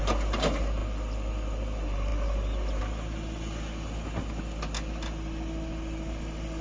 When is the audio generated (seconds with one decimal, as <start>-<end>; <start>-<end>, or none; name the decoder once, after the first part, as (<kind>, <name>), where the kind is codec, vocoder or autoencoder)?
none